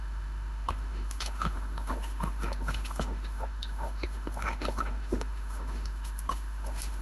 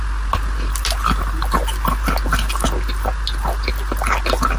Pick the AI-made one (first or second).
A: first